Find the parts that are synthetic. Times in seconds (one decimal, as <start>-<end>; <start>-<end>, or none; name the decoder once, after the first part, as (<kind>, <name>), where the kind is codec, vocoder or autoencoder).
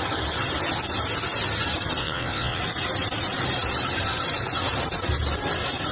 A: 2.0-2.6 (vocoder, WaveNeXt)